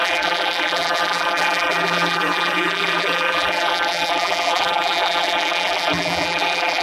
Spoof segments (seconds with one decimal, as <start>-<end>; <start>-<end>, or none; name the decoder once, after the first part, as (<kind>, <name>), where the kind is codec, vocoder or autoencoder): 0.0-6.8 (vocoder, BigVGAN v2)